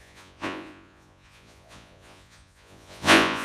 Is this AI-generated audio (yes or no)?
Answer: yes